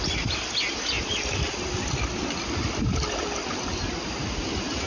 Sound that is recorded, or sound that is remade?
recorded